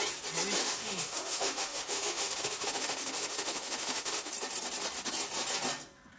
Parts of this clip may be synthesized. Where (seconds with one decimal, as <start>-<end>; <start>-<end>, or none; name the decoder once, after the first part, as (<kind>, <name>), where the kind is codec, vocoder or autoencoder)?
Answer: 0.6-4.3 (autoencoder, DAC-VAE)